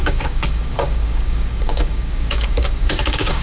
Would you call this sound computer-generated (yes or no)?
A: yes